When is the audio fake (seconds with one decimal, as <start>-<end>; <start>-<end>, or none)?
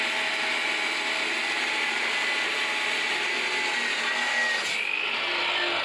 none